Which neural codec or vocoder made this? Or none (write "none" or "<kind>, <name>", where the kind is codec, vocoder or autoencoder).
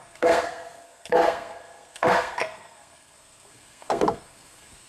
codec, SNAC